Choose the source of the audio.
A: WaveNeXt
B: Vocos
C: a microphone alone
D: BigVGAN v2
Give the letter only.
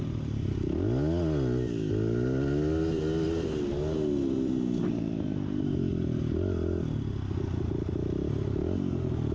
C